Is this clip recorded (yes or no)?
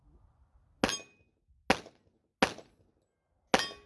yes